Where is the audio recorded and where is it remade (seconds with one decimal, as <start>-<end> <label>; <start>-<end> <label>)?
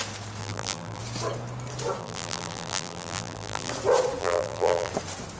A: 0.0-0.4 recorded; 0.4-1.0 remade; 1.0-2.0 recorded; 2.0-3.7 remade; 3.7-4.2 recorded; 4.2-4.9 remade; 4.9-5.4 recorded